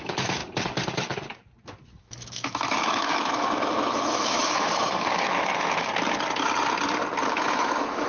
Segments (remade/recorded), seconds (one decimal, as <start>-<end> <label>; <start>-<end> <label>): 0.0-0.4 remade; 0.4-2.0 recorded; 2.0-5.9 remade; 5.9-7.3 recorded; 7.3-8.1 remade